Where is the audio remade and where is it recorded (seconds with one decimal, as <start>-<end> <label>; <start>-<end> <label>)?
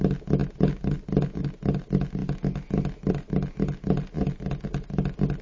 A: 0.0-5.4 recorded